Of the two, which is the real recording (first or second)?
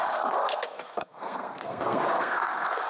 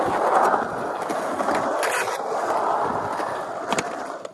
second